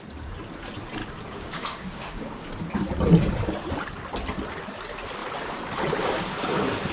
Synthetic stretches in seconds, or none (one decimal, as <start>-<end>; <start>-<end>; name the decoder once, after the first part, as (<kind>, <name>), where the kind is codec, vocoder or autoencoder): 1.0-2.5 (codec, DAC)